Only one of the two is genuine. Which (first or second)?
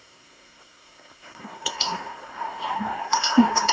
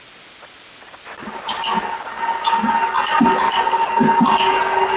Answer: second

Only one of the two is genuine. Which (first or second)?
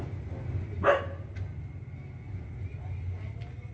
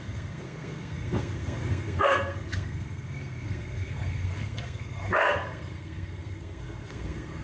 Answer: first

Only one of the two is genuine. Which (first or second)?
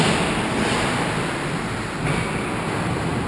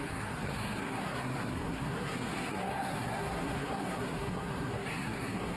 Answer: first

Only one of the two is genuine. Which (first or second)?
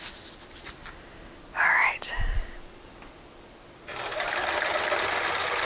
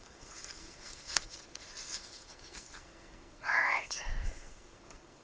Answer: first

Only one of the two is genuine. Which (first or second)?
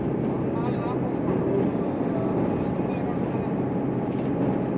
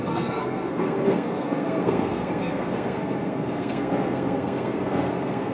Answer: first